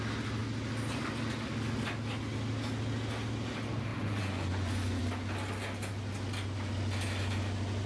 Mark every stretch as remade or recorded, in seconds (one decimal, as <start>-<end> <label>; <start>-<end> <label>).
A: 0.0-3.9 recorded; 3.9-5.0 remade; 5.0-7.9 recorded